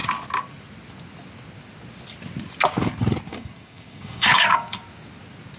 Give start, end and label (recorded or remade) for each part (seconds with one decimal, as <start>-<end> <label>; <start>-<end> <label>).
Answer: 0.0-3.3 recorded; 3.3-4.8 remade; 4.8-5.6 recorded